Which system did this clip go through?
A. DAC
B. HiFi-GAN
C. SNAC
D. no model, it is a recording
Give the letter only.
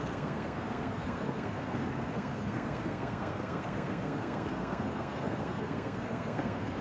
C